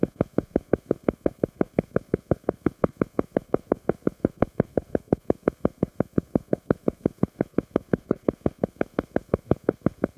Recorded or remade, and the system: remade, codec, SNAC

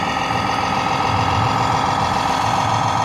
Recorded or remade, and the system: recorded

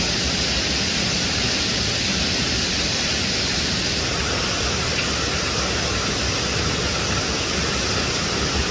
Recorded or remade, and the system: recorded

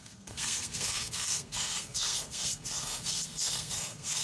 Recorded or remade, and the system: remade, codec, SNAC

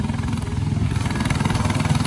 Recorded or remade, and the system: recorded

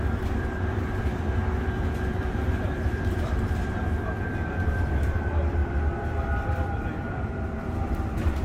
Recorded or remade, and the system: remade, vocoder, BigVGAN v2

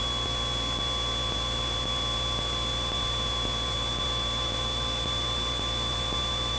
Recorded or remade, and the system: recorded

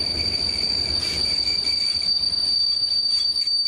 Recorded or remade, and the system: recorded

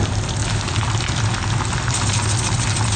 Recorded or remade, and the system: recorded